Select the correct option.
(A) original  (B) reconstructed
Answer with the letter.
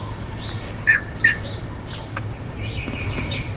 A